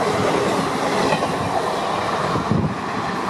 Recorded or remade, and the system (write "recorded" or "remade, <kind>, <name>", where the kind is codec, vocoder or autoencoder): recorded